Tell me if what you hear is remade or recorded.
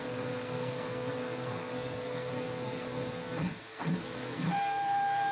remade